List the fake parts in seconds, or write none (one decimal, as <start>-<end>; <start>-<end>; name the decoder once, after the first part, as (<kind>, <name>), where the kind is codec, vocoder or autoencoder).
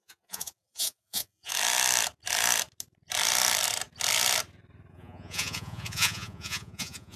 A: 0.0-1.5 (vocoder, Vocos); 4.9-7.2